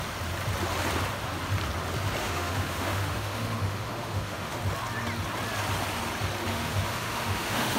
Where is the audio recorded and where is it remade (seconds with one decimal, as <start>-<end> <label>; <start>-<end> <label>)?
0.0-2.2 recorded; 2.2-4.6 remade; 4.6-6.5 recorded; 6.5-7.8 remade